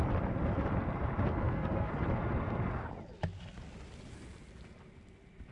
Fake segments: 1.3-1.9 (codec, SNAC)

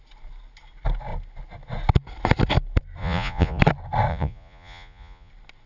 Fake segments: 3.0-3.6 (vocoder, Vocos); 4.1-5.3

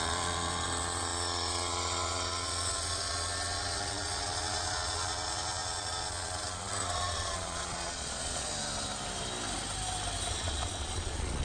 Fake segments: 0.0-8.5 (vocoder, Vocos); 10.3-11.4

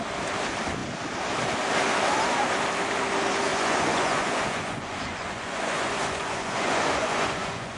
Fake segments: 3.5-7.8 (vocoder, Vocos)

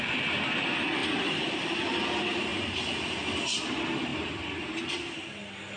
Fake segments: none

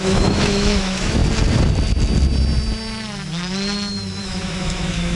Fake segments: 0.0-1.2 (autoencoder, DAC-VAE); 4.2-5.2

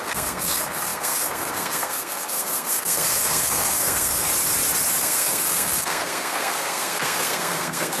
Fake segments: 0.0-4.3 (codec, SNAC); 5.0-8.0

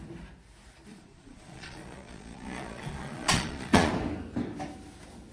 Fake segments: 0.9-3.9 (vocoder, Vocos)